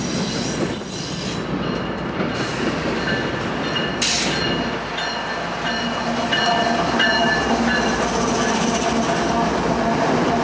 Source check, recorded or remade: recorded